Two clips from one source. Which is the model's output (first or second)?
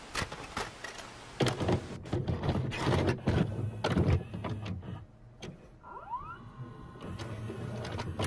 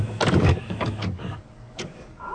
second